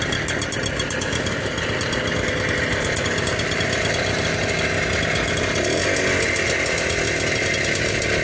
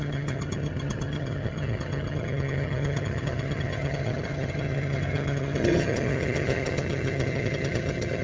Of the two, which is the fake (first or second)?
second